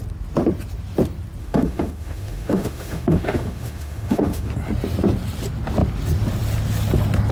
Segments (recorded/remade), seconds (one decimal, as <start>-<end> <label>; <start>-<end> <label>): 0.0-1.4 recorded; 1.4-4.5 remade; 4.5-7.3 recorded